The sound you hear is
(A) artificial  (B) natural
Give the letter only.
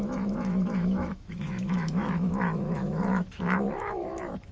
A